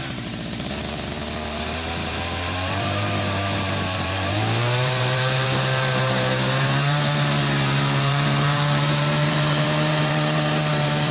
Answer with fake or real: fake